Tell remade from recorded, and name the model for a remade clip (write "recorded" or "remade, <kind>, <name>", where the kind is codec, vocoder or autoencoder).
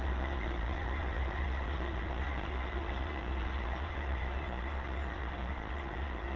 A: remade, vocoder, Vocos